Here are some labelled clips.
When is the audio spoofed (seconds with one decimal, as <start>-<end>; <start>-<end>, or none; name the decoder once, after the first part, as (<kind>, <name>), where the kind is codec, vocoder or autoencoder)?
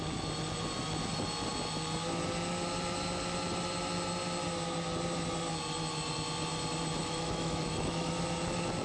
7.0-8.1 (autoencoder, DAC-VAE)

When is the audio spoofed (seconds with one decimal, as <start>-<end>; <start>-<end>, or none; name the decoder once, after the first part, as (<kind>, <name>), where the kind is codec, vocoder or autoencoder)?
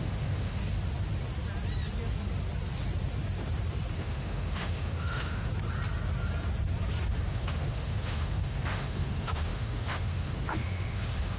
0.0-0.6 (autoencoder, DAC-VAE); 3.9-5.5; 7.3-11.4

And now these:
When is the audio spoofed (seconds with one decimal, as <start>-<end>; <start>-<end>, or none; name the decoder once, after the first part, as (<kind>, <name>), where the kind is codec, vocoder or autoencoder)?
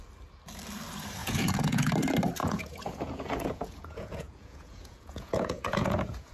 1.2-1.9 (vocoder, Vocos); 2.4-6.3